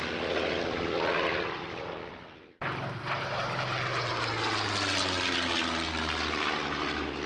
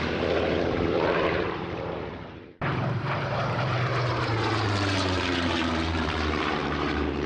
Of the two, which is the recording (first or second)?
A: first